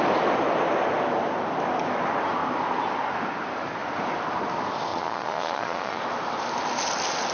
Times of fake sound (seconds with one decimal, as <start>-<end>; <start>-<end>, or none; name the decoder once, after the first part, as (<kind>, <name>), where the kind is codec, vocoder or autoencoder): 4.9-6.0 (vocoder, Vocos)